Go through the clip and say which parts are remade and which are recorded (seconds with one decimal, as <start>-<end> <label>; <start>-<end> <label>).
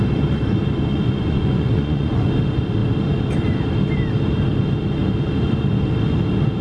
0.0-0.9 recorded; 0.9-2.3 remade; 2.3-6.6 recorded